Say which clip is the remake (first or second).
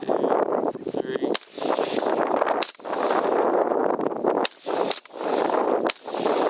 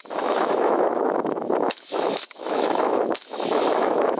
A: second